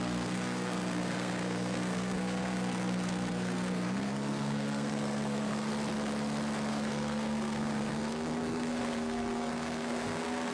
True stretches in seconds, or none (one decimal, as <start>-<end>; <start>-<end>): 5.7-6.7